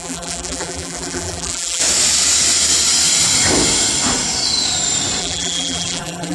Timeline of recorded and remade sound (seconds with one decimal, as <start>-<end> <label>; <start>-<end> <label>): 0.0-1.8 remade; 1.8-5.2 recorded; 5.2-6.3 remade